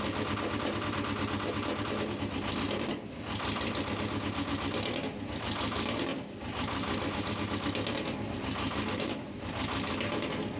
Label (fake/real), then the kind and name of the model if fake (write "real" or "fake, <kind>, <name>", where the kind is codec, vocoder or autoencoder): real